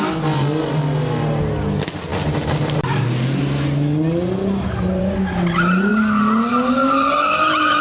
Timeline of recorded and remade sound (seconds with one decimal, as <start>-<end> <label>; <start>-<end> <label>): 0.0-7.8 recorded